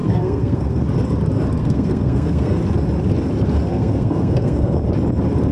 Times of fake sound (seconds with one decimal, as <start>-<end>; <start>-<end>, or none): 0.0-0.8; 1.6-2.6; 3.7-4.8